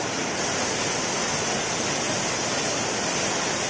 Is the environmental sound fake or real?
real